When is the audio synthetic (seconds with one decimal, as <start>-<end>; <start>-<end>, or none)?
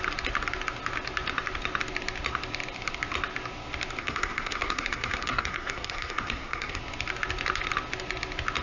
4.0-6.8